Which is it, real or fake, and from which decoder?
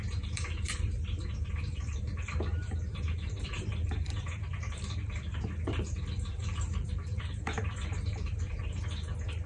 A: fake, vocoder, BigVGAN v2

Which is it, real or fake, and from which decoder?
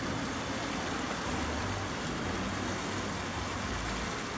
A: real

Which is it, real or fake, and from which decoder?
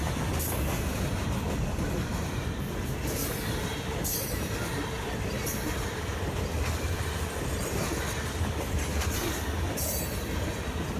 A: fake, vocoder, BigVGAN v2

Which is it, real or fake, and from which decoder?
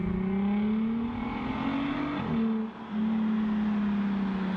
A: real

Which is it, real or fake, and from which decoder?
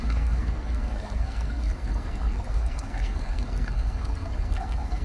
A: fake, codec, SNAC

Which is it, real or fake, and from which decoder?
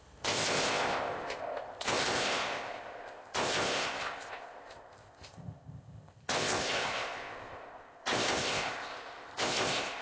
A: fake, codec, ZipCodec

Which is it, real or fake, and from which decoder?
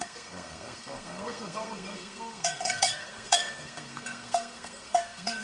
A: fake, codec, SNAC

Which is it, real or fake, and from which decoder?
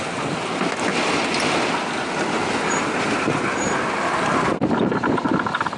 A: real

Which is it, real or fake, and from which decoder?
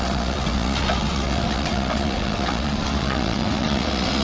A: fake, vocoder, WaveNeXt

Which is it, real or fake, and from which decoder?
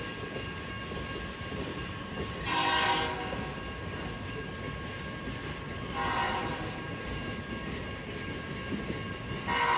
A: real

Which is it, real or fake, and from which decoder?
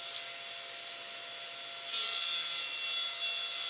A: real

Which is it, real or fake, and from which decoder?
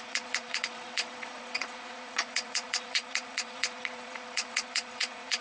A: fake, vocoder, Vocos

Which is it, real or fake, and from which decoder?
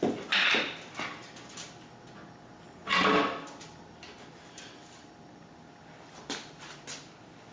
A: real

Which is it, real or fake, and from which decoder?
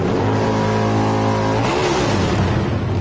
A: real